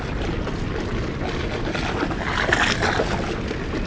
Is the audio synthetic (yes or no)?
no